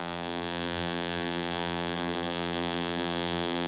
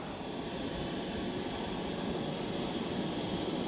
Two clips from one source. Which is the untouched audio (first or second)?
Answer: second